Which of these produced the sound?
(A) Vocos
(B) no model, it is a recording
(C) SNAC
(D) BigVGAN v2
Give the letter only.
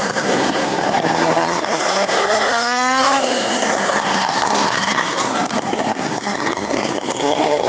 C